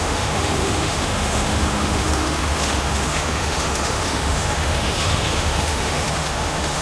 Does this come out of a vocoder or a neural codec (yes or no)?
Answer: yes